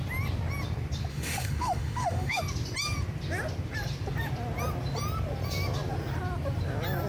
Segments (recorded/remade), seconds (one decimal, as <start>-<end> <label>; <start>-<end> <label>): 0.0-1.1 recorded; 1.1-2.4 remade; 2.4-7.1 recorded